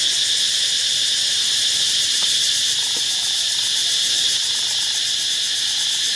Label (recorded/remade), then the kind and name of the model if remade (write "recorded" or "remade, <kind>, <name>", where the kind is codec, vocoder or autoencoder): remade, vocoder, BigVGAN v2